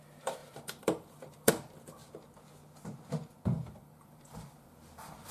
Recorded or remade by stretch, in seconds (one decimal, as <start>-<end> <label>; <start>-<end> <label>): 0.0-2.0 remade; 2.0-3.7 recorded; 3.7-5.3 remade